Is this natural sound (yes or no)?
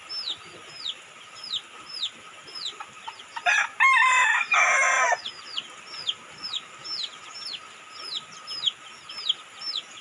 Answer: yes